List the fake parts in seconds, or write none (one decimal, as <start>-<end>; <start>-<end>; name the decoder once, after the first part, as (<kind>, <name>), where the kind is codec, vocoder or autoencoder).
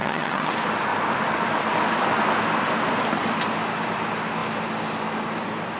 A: 0.0-0.5 (vocoder, HiFi-GAN)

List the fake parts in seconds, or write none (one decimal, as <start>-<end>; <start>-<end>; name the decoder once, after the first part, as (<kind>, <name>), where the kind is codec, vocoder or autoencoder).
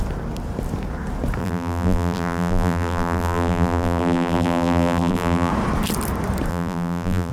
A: 1.4-5.5 (vocoder, BigVGAN v2); 6.5-7.3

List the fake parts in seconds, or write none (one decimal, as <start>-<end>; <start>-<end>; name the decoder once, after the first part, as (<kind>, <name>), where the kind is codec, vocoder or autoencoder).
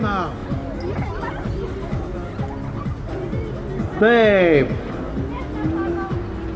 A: none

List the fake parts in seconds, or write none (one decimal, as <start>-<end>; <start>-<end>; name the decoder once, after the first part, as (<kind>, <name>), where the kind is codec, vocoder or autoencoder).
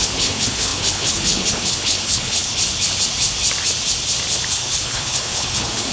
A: 0.0-2.5 (codec, HILCodec); 4.5-5.9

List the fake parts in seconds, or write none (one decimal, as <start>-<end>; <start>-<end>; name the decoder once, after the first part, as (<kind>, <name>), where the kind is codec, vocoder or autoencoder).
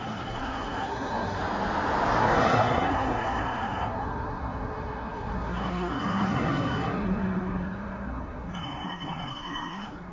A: 0.0-1.4 (codec, SNAC); 2.2-10.1